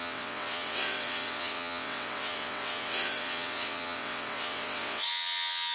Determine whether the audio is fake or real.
fake